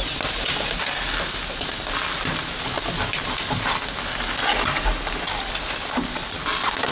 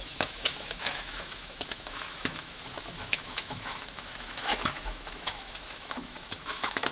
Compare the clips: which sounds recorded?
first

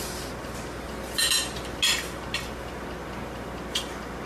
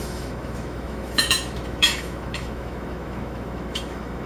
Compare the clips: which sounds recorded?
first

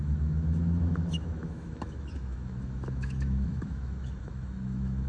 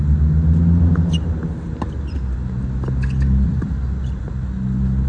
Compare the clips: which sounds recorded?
second